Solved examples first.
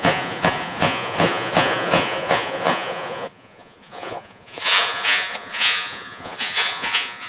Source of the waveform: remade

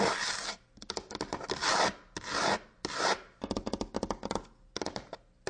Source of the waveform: recorded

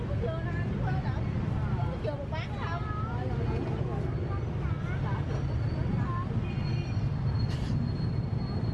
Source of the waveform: recorded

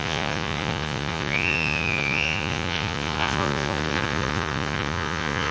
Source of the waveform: remade